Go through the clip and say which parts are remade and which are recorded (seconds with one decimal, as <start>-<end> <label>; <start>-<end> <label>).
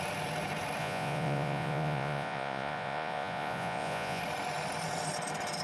0.0-0.8 recorded; 0.8-4.2 remade; 4.2-5.6 recorded